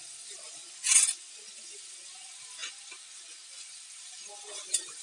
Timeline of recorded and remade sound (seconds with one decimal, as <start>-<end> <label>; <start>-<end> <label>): 0.0-0.6 remade; 0.6-1.6 recorded; 1.6-2.6 remade; 2.6-3.5 recorded; 3.5-5.0 remade